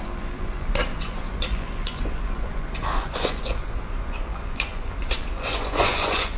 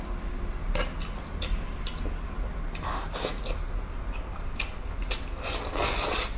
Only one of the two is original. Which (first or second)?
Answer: second